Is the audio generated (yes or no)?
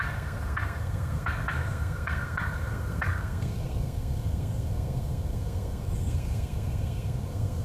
yes